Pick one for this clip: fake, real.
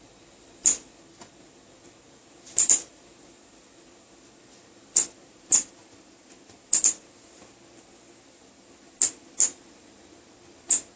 real